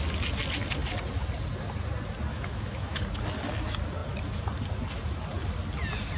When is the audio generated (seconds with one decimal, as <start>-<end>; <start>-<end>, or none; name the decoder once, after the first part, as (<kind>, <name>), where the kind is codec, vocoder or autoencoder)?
2.3-3.0 (autoencoder, DAC-VAE)